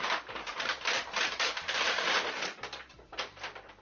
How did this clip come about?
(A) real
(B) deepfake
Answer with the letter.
B